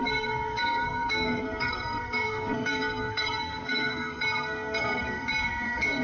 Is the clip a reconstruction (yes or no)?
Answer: yes